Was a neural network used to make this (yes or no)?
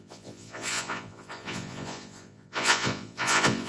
yes